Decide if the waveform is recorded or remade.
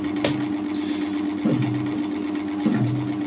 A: recorded